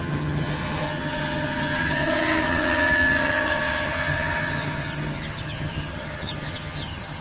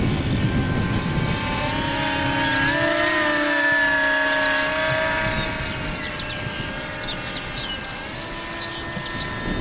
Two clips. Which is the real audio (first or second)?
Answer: second